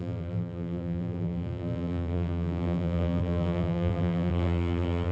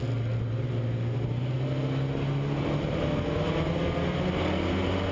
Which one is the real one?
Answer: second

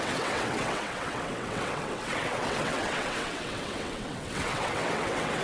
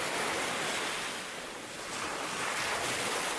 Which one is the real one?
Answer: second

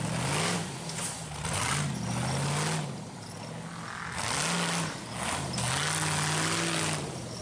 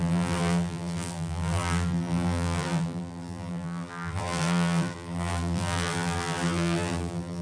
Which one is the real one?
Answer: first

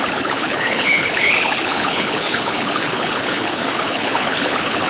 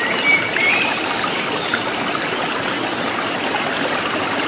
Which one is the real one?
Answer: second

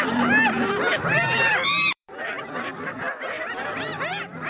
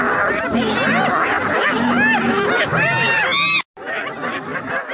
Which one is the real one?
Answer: second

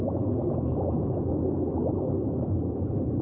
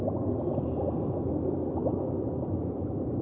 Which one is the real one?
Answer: second